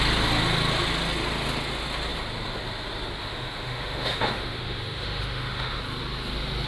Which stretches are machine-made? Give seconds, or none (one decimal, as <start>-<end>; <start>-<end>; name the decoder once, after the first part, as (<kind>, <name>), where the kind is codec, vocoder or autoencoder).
3.2-5.8 (autoencoder, DAC-VAE)